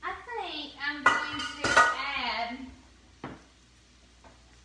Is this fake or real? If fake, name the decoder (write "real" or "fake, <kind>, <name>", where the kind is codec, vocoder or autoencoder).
real